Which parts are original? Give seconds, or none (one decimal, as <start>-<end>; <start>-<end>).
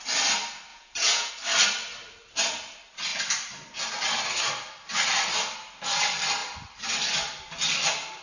0.0-0.7; 1.3-8.2